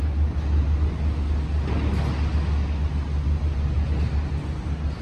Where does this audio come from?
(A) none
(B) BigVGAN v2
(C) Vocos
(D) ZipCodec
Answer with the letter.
A